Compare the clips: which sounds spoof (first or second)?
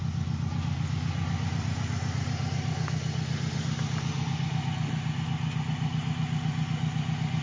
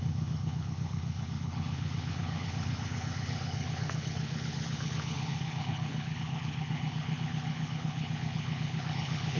second